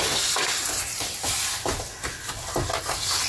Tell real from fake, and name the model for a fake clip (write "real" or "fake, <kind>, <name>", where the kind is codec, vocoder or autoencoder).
real